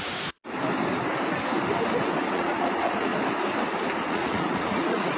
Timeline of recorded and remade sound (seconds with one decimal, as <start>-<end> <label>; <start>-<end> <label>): 0.0-0.4 remade; 0.4-2.3 recorded; 2.3-3.1 remade; 3.1-4.1 recorded; 4.1-5.2 remade